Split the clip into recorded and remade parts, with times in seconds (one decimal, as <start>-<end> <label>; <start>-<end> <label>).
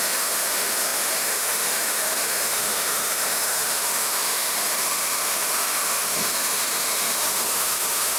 0.0-8.2 remade